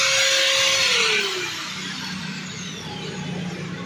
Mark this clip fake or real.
real